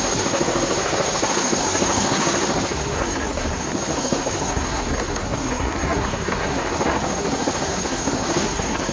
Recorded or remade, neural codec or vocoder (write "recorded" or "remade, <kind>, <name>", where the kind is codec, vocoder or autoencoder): remade, codec, SNAC